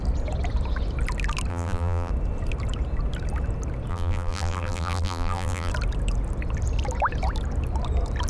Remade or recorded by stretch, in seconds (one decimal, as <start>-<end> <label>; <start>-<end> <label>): 0.0-1.5 recorded; 1.5-2.1 remade; 2.1-3.9 recorded; 3.9-5.7 remade; 5.7-8.3 recorded